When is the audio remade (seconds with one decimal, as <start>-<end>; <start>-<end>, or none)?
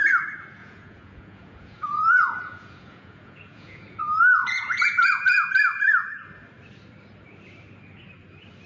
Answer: 0.6-4.0; 4.4-5.5